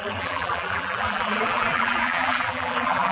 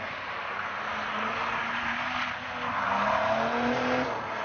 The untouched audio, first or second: second